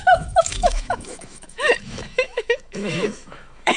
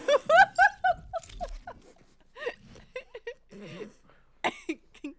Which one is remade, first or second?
first